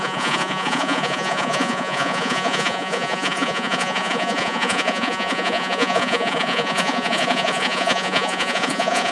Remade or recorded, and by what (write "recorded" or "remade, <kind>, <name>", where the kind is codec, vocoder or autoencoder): remade, vocoder, Vocos